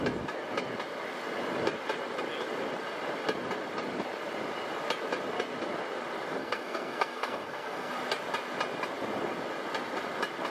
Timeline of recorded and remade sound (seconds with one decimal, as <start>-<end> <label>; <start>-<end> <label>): 0.0-6.4 recorded; 6.4-7.9 remade; 7.9-10.5 recorded